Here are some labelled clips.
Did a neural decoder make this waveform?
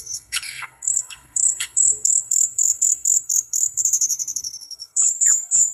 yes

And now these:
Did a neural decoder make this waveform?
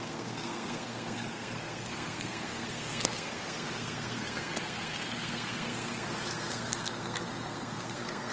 yes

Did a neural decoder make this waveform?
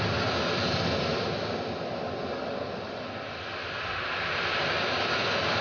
no